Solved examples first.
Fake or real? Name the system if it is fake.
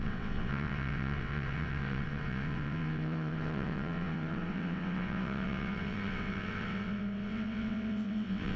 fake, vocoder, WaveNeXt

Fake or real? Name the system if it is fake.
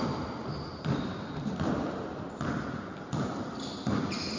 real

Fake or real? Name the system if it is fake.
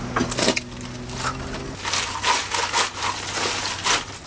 real